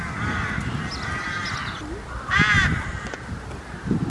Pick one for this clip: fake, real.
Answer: real